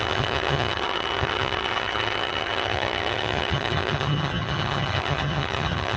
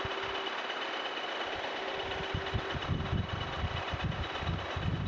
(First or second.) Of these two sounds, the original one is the second